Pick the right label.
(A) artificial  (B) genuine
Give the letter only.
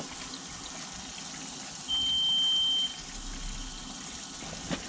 B